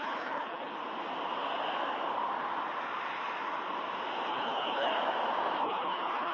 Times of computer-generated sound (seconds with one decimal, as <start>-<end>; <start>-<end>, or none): 0.0-0.7; 4.3-4.9; 5.6-6.3